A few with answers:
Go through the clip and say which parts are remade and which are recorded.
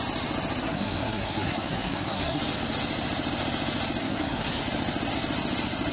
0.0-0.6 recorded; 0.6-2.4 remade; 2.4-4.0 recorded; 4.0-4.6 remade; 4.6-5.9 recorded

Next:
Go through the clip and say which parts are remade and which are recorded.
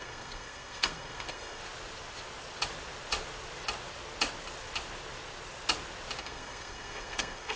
0.0-1.6 remade; 1.6-6.2 recorded; 6.2-7.6 remade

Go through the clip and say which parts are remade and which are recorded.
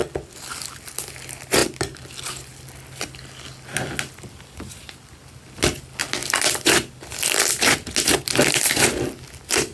0.0-9.7 recorded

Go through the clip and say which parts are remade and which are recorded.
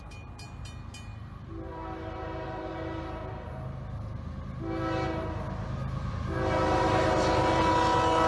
0.0-8.3 recorded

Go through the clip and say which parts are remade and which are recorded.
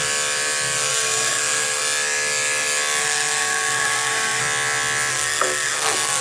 0.0-0.9 recorded; 0.9-1.8 remade; 1.8-3.0 recorded; 3.0-4.4 remade; 4.4-5.1 recorded; 5.1-6.2 remade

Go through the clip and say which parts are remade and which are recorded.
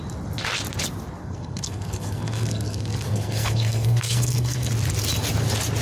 0.0-1.2 recorded; 1.2-4.7 remade; 4.7-5.8 recorded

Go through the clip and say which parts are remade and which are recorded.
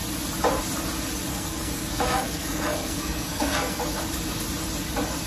0.0-1.3 recorded; 1.3-3.9 remade; 3.9-5.3 recorded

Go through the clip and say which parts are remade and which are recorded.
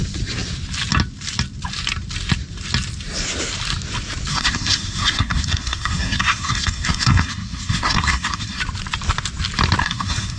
0.0-4.3 recorded; 4.3-8.6 remade; 8.6-9.8 recorded; 9.8-10.4 remade